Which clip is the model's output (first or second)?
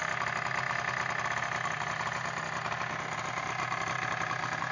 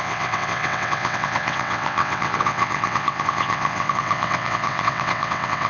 second